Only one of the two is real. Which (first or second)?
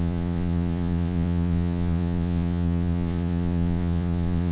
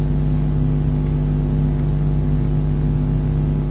second